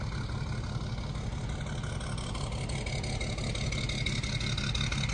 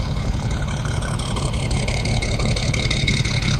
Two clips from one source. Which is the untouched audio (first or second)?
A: first